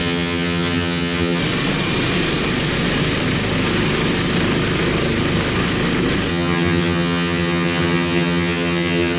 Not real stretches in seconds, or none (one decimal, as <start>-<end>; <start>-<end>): 0.0-1.4; 6.3-9.2